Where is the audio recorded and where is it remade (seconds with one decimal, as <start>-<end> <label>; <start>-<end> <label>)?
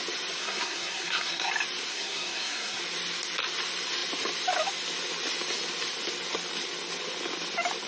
0.0-0.4 recorded; 0.4-1.5 remade; 1.5-1.9 recorded; 1.9-2.8 remade; 2.8-7.9 recorded